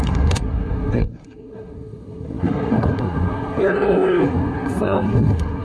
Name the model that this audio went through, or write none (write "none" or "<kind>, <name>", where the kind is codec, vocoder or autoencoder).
codec, SNAC